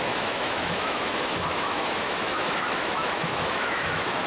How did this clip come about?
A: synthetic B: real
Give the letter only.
A